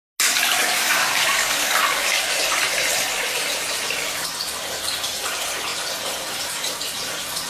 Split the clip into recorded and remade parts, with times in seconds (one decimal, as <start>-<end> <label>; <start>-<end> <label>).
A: 0.0-0.6 recorded; 0.6-2.3 remade; 2.3-7.5 recorded